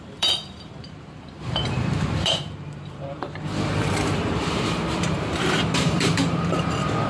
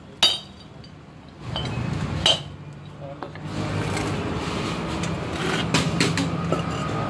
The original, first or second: second